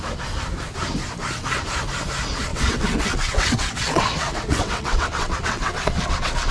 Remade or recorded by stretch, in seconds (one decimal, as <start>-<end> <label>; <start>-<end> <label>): 0.0-2.5 recorded; 2.5-6.5 remade